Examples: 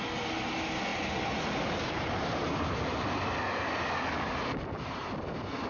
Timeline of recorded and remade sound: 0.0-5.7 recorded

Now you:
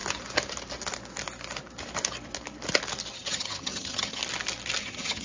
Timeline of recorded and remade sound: 0.0-3.1 recorded; 3.1-4.2 remade; 4.2-4.8 recorded; 4.8-5.2 remade

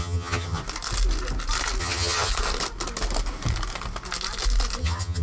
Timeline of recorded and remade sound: 0.0-0.6 remade; 0.6-1.8 recorded; 1.8-2.3 remade; 2.3-4.8 recorded; 4.8-5.2 remade

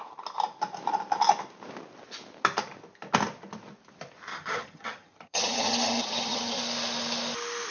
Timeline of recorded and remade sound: 0.0-4.3 recorded; 4.3-6.6 remade; 6.6-7.7 recorded